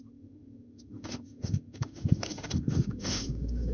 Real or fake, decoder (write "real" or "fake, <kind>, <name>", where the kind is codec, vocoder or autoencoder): fake, autoencoder, DAC-VAE